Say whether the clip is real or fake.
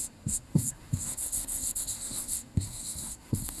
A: fake